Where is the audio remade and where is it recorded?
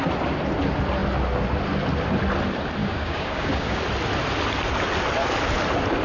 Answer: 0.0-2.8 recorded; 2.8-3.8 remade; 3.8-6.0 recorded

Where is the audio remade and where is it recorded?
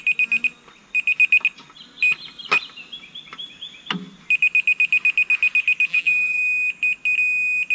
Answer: 0.0-5.9 recorded; 5.9-6.4 remade; 6.4-7.7 recorded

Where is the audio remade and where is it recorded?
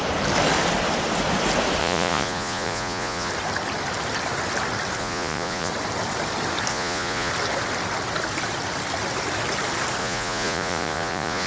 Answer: 0.0-1.8 recorded; 1.8-3.3 remade; 3.3-5.0 recorded; 5.0-5.7 remade; 5.7-6.7 recorded; 6.7-7.3 remade; 7.3-10.0 recorded; 10.0-11.5 remade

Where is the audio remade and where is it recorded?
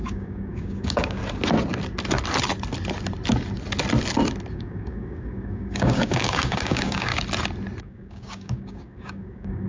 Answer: 0.0-1.2 remade; 1.2-4.5 recorded; 4.5-7.1 remade; 7.1-7.8 recorded; 7.8-9.7 remade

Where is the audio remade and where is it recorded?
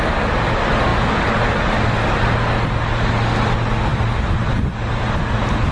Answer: 0.0-5.7 recorded